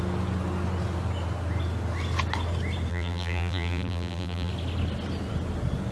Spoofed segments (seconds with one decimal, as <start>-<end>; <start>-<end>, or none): 2.9-4.5